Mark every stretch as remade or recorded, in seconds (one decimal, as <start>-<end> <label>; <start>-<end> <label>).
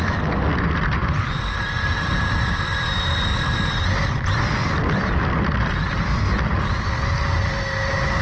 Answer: 0.0-1.0 recorded; 1.0-4.4 remade; 4.4-5.6 recorded; 5.6-6.3 remade; 6.3-8.2 recorded